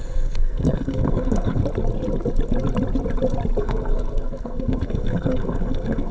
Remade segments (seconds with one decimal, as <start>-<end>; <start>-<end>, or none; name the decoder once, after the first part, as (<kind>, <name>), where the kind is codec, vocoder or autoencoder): 0.0-1.6 (codec, SNAC); 3.6-6.1